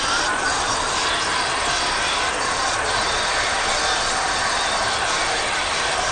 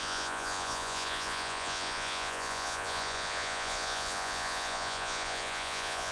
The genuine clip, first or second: first